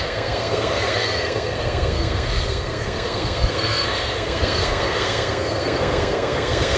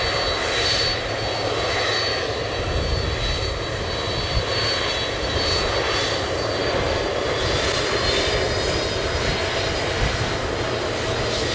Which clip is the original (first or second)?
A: second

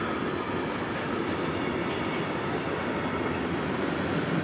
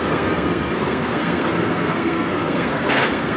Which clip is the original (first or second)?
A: first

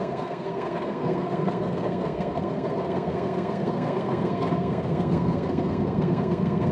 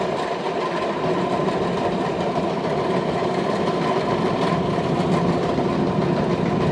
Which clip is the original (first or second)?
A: second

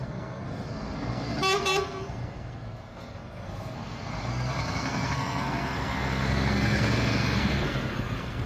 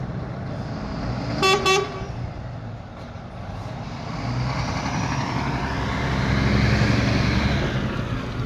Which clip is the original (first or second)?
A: second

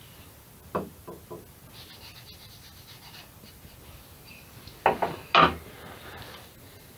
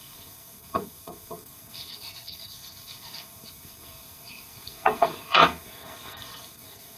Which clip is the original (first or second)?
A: first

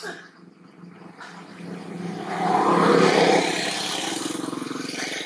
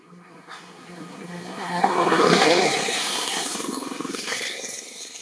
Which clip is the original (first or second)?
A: first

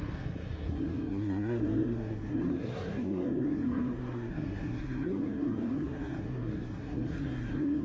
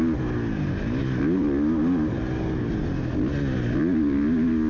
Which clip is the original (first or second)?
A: second